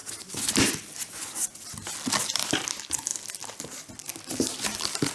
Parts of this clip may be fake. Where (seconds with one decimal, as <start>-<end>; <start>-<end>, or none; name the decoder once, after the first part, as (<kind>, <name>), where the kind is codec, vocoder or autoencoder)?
none